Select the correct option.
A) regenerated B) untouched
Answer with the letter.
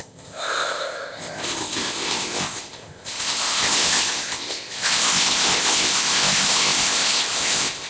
A